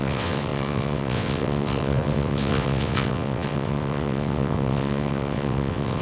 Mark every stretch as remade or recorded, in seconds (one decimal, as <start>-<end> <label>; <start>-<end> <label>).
0.0-6.0 remade